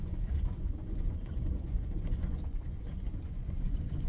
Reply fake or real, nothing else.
fake